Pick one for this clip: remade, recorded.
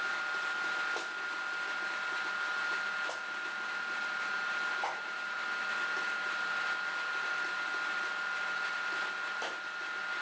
recorded